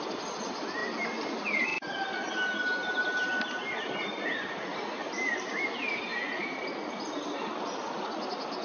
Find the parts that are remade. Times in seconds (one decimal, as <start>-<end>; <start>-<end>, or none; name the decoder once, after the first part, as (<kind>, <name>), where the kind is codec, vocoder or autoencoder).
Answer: none